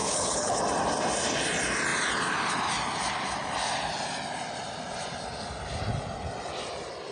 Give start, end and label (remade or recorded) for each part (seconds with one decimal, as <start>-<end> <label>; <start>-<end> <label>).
0.0-0.6 remade; 0.6-7.1 recorded